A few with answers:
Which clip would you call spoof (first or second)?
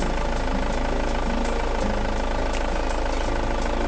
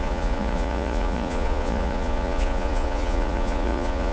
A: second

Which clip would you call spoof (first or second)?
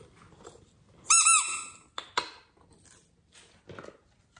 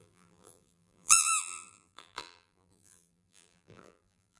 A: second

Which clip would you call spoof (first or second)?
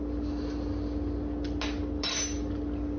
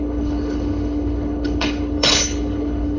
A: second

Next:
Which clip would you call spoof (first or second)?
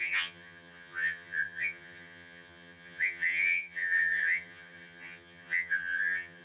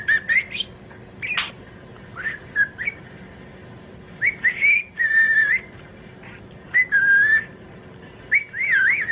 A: first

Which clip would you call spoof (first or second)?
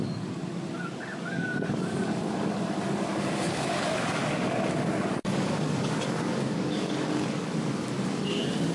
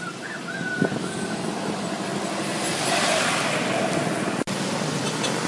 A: first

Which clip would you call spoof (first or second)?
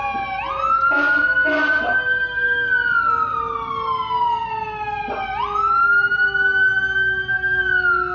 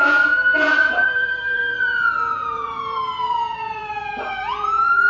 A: second